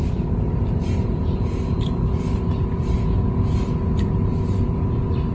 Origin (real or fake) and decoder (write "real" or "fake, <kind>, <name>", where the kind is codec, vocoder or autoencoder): real